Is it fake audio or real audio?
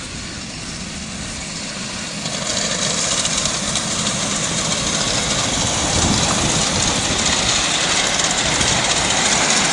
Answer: real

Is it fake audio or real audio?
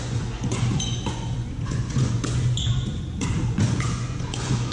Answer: fake